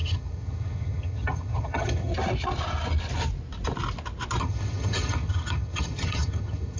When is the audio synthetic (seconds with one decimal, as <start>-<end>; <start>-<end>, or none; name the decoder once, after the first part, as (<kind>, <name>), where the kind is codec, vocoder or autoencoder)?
0.0-2.1 (vocoder, HiFi-GAN); 4.4-6.8